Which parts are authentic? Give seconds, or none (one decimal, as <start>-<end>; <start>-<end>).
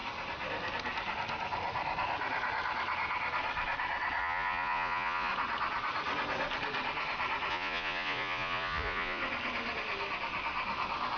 0.0-4.2; 5.3-7.5; 9.2-11.2